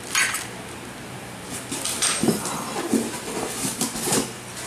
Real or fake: real